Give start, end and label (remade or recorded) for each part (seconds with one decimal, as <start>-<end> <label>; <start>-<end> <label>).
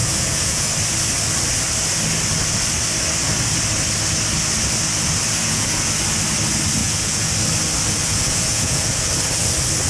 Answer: 0.0-0.7 remade; 0.7-5.4 recorded; 5.4-5.9 remade; 5.9-6.8 recorded; 6.8-7.3 remade; 7.3-8.0 recorded; 8.0-9.1 remade; 9.1-9.9 recorded